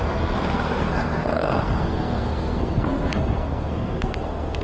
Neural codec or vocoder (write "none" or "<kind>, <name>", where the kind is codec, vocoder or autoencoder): codec, SNAC